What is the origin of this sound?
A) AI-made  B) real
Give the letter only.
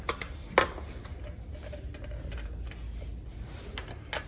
B